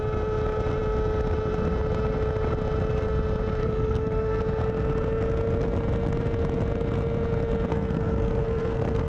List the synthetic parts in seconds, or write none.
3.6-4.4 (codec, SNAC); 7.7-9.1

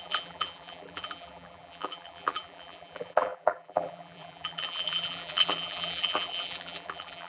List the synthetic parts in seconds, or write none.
0.0-7.3 (vocoder, BigVGAN v2)

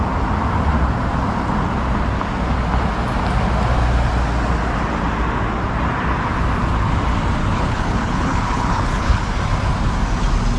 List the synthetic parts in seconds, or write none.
7.4-9.2 (codec, HILCodec)

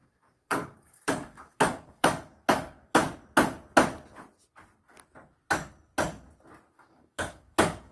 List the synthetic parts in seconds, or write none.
0.0-3.0 (codec, DAC); 6.7-7.9

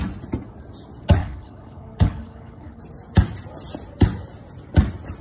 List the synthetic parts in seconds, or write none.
1.2-2.8 (codec, HILCodec)

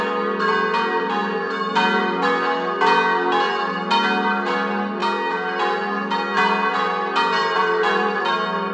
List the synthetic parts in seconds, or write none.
7.4-8.2 (vocoder, BigVGAN v2)